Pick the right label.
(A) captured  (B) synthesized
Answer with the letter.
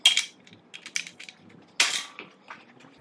A